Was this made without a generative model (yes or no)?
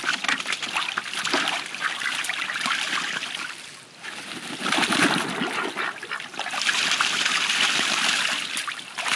yes